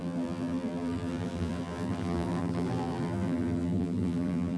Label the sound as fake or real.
fake